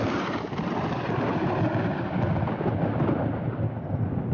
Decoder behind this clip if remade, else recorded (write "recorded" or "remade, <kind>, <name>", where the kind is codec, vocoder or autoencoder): recorded